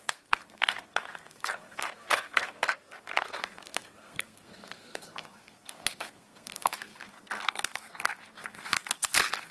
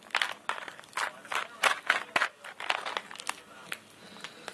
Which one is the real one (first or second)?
second